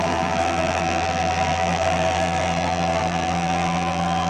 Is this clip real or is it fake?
fake